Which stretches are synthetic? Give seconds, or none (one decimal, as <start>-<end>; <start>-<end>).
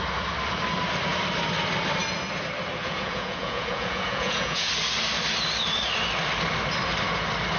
2.8-4.7